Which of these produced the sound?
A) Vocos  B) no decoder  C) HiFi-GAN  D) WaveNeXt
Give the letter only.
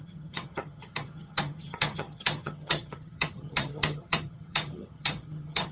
C